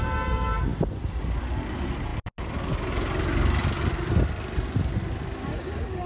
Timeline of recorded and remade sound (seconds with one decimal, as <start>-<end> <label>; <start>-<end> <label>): 0.0-5.5 recorded; 5.5-6.1 remade